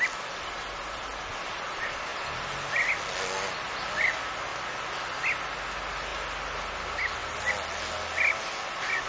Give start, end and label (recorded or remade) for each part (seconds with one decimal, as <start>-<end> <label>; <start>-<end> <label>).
0.0-9.1 recorded